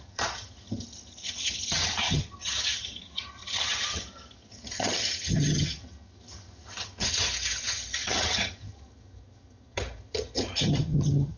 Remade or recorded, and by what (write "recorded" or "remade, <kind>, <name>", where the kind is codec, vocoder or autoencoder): remade, vocoder, HiFi-GAN